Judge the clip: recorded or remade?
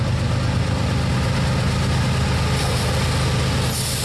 recorded